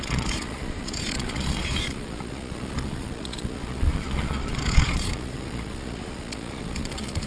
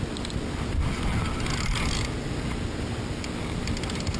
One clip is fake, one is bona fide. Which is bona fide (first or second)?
second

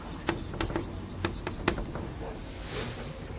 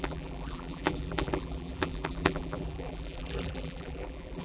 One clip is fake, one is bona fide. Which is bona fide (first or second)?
first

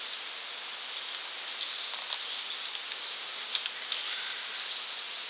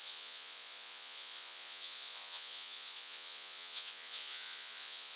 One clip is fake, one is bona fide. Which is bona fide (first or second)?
first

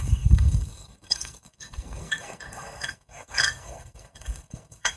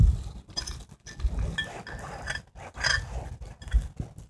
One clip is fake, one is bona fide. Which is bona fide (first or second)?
second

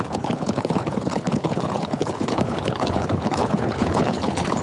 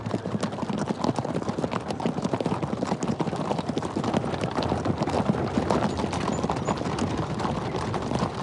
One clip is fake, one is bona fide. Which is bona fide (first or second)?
second